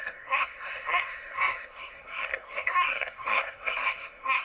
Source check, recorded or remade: remade